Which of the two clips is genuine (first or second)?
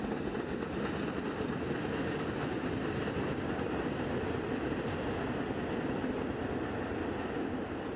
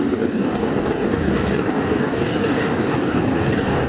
first